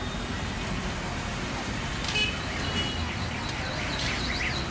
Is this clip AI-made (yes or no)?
no